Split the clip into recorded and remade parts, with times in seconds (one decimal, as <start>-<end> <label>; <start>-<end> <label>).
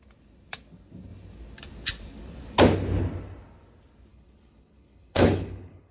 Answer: 0.0-4.1 recorded; 4.1-5.9 remade